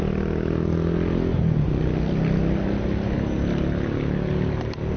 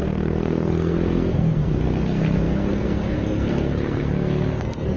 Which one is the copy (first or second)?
second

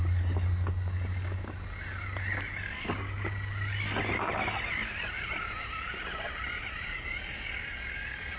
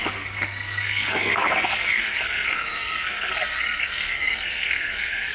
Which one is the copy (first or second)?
second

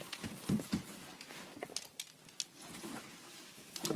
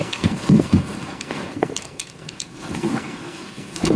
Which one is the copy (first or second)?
second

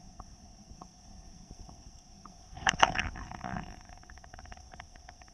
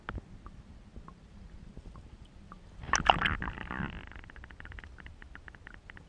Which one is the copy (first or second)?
first